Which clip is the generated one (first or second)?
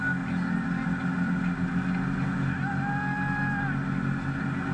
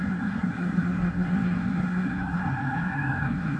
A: second